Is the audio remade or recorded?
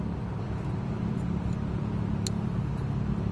recorded